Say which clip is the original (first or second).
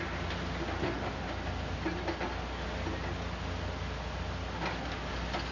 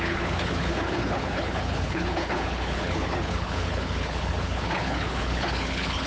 first